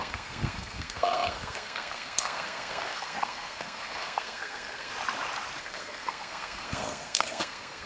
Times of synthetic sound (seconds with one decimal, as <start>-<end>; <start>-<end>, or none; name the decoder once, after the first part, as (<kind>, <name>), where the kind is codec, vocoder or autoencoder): 0.0-4.9 (codec, SNAC); 5.6-7.9